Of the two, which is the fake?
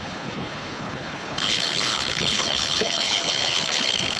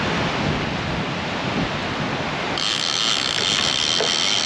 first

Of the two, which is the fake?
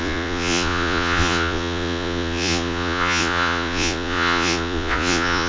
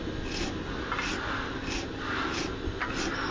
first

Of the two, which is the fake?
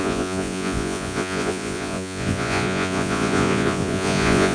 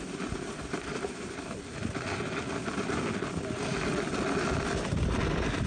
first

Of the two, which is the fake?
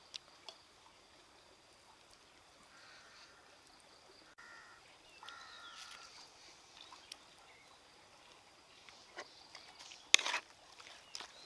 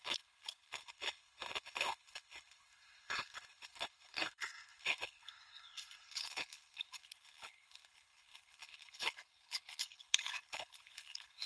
second